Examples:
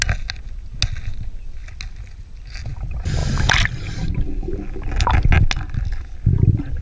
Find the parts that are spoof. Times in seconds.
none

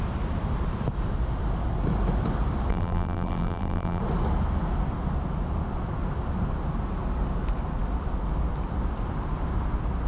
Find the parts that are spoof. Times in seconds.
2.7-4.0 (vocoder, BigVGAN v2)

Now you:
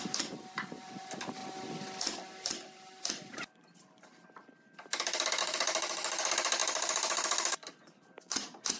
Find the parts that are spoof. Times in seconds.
0.0-1.4 (vocoder, BigVGAN v2); 5.4-8.8

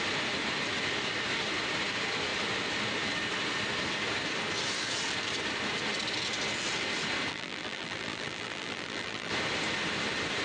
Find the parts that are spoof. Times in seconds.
7.3-9.3 (vocoder, BigVGAN v2)

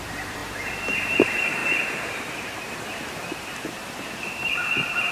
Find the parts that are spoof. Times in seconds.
0.0-5.1 (vocoder, BigVGAN v2)